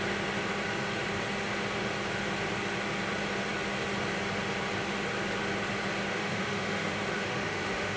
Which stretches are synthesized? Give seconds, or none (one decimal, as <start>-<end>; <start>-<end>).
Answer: 6.1-8.0